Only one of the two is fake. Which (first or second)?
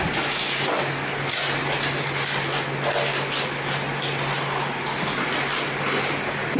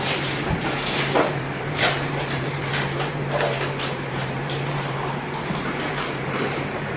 second